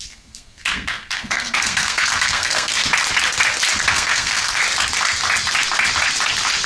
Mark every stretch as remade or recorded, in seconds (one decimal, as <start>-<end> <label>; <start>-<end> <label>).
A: 0.0-2.8 remade; 2.8-3.9 recorded; 3.9-4.6 remade; 4.6-6.7 recorded